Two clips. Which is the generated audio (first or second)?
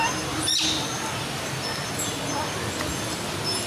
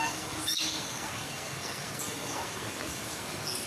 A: second